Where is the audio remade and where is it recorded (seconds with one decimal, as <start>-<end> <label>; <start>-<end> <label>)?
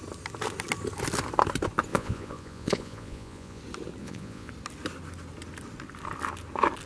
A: 0.0-1.9 recorded; 1.9-3.6 remade; 3.6-4.0 recorded; 4.0-4.5 remade; 4.5-6.9 recorded